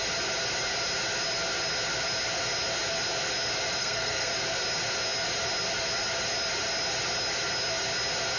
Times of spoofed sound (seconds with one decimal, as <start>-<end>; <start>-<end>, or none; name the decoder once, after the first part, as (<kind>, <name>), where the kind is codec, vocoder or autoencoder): 3.8-4.3 (codec, SNAC)